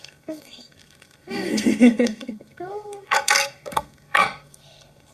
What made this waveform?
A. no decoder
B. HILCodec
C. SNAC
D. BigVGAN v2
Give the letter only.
C